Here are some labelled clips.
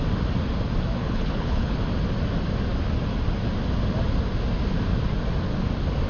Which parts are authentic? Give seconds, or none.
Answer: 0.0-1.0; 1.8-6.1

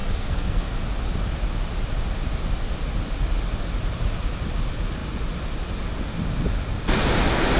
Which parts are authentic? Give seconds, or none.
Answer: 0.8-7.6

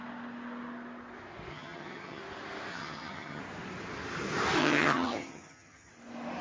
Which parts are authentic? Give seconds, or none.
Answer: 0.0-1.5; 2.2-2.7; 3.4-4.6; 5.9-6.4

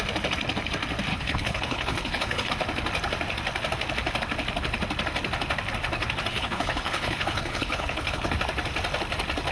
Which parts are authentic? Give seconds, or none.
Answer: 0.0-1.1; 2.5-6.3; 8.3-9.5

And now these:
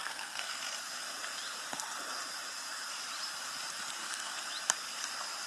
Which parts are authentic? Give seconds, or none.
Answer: 0.6-4.0; 4.5-5.5